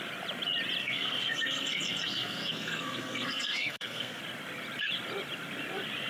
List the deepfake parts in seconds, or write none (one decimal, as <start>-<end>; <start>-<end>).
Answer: 0.8-4.2